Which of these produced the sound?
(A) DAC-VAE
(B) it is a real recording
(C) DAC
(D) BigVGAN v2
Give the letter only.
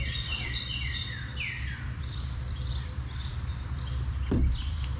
D